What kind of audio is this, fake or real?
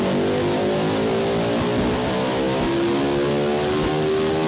real